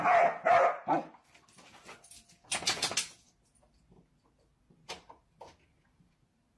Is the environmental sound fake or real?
real